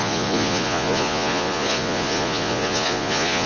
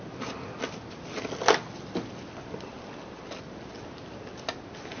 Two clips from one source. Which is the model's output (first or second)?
first